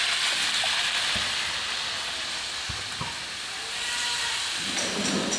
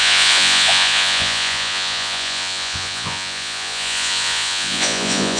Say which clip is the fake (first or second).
second